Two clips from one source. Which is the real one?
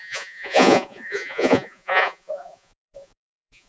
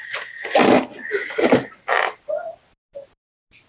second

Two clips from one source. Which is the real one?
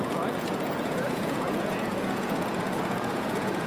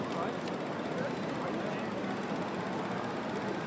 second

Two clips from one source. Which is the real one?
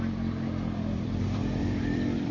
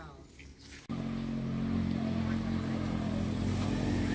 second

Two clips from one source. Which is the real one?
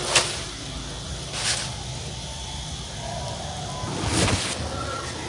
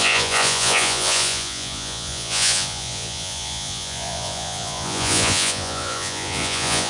first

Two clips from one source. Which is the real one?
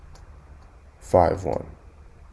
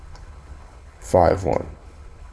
first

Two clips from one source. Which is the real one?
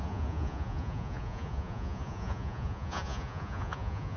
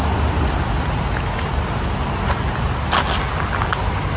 second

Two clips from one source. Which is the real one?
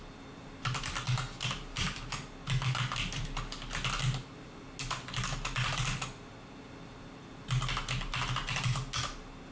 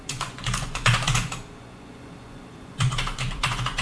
first